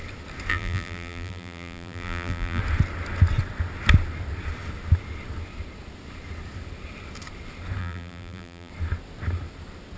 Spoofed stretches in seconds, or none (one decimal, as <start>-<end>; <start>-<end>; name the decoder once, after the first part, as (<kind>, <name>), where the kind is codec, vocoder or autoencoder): 0.5-2.6 (vocoder, BigVGAN v2); 7.8-8.7